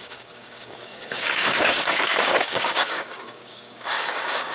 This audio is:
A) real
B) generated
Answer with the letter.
B